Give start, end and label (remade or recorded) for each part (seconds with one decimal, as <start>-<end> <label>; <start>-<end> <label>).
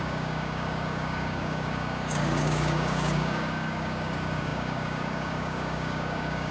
0.0-6.5 remade